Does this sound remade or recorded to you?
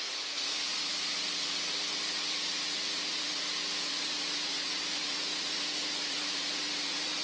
remade